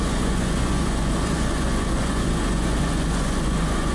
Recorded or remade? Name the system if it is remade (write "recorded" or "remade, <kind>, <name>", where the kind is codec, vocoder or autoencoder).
remade, vocoder, Vocos